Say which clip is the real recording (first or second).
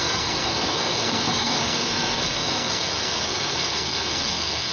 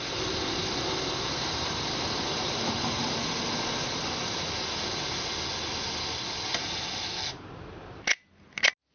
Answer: second